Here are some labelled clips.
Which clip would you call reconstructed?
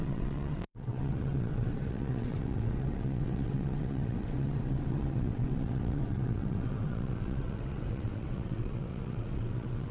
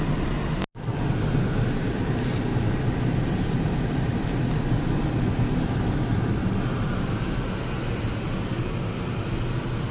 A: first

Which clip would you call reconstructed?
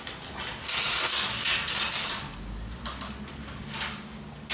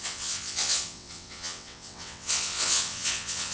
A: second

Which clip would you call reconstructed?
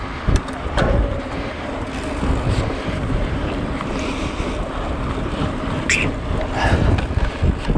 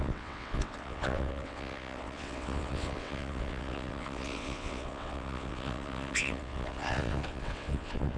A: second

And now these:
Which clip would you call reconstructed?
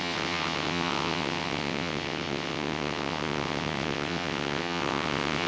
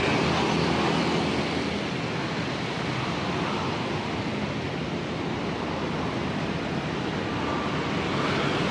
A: first